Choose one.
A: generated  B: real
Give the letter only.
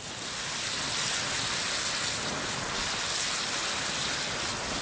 B